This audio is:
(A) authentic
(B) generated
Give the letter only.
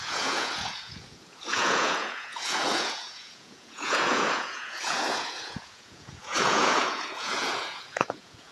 B